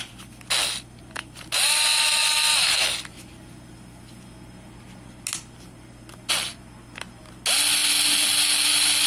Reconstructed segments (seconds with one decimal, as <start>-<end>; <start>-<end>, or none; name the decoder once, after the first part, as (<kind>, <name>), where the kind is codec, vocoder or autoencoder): none